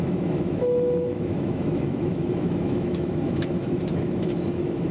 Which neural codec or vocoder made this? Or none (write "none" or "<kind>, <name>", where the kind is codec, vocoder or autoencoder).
autoencoder, DAC-VAE